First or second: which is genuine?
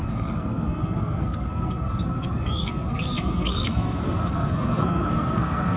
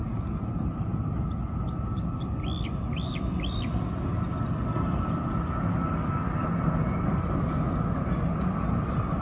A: second